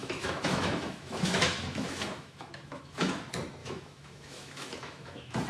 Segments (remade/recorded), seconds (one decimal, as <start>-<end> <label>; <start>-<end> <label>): 0.0-3.1 remade; 3.1-3.6 recorded; 3.6-5.5 remade